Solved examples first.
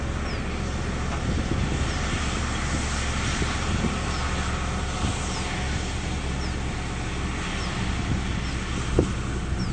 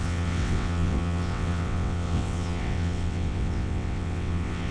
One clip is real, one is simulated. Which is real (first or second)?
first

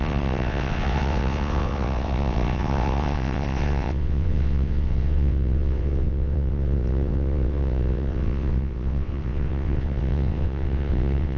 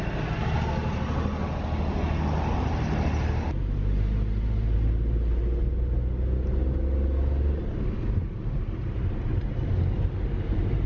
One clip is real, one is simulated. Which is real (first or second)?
second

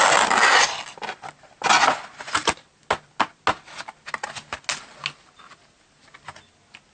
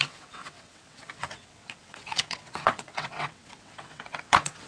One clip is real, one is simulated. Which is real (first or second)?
first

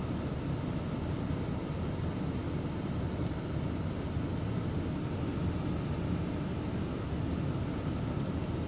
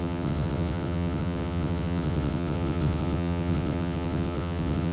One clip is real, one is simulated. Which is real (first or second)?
first